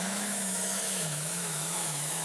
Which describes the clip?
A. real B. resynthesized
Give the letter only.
B